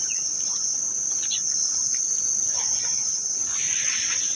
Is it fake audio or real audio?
real